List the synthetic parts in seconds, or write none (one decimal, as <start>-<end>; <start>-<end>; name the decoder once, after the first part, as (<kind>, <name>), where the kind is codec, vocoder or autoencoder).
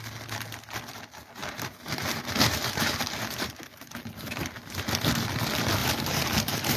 1.4-4.9 (vocoder, BigVGAN v2); 5.8-6.8